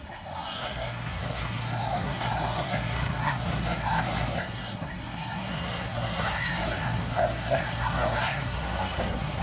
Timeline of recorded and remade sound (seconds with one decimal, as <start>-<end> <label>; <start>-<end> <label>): 0.0-9.4 remade

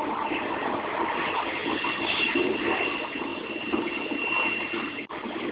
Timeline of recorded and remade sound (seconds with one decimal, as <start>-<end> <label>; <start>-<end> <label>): 0.0-5.5 recorded

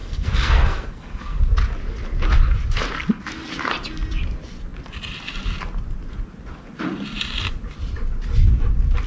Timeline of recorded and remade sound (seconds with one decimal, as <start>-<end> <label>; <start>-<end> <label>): 0.0-1.4 remade; 1.4-9.1 recorded

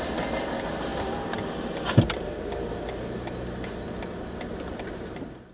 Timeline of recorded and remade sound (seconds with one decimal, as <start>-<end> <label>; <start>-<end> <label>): 0.0-5.5 recorded

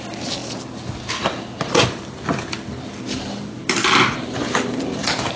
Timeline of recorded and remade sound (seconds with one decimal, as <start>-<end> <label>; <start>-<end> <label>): 0.0-5.4 recorded

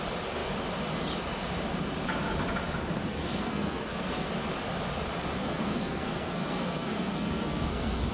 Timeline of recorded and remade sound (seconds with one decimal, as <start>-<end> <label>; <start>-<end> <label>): 0.0-3.1 recorded; 3.1-4.3 remade; 4.3-5.4 recorded; 5.4-8.1 remade

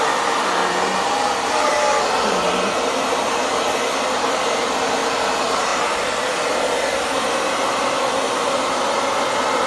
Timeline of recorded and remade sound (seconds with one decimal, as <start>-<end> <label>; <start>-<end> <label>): 0.0-9.7 recorded

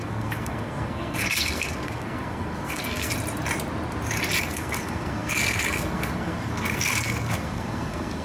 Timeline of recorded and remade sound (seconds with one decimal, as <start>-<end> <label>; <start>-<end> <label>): 0.0-3.1 remade; 3.1-4.4 recorded; 4.4-8.2 remade